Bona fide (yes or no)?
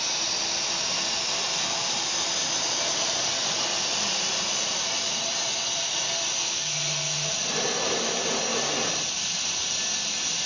yes